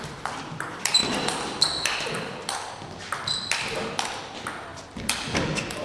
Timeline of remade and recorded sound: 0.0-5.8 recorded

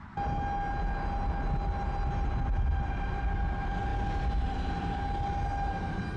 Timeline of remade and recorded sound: 0.0-6.2 recorded

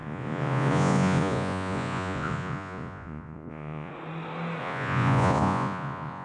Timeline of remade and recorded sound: 0.0-3.9 remade; 3.9-4.6 recorded; 4.6-6.2 remade

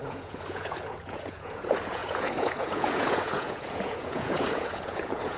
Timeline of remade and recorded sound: 0.0-5.4 remade

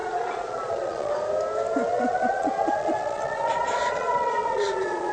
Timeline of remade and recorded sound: 0.0-1.1 remade; 1.1-1.9 recorded; 1.9-5.1 remade

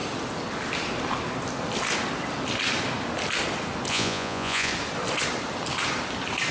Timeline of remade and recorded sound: 0.0-3.9 recorded; 3.9-4.7 remade; 4.7-6.5 recorded

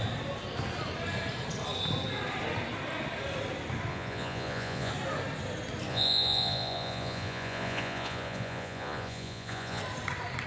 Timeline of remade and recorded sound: 0.0-3.9 recorded; 3.9-4.9 remade; 4.9-5.9 recorded; 5.9-9.8 remade; 9.8-10.5 recorded